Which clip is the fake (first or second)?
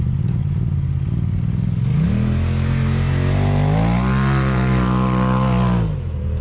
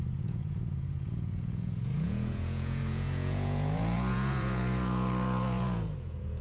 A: second